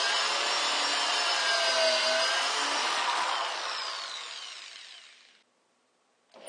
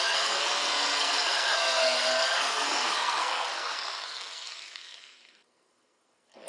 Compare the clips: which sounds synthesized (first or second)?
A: second